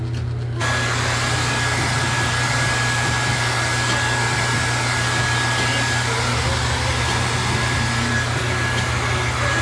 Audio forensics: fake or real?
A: real